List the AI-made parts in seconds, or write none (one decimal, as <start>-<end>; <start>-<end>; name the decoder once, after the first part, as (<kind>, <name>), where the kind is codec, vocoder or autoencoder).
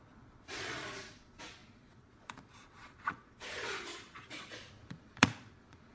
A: 0.0-5.9 (vocoder, Vocos)